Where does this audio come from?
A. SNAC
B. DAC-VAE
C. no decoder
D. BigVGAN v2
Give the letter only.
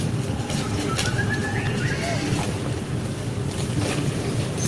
C